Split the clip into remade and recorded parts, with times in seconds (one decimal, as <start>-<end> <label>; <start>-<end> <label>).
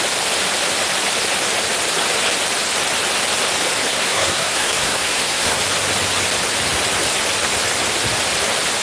0.0-3.9 recorded; 3.9-5.6 remade; 5.6-8.8 recorded